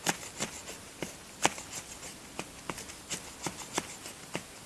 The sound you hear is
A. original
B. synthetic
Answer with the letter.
A